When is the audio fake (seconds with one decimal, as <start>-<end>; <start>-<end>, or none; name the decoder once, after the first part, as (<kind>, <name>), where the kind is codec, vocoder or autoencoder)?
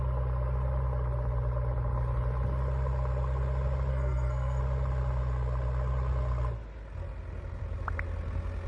3.9-4.6 (codec, SNAC)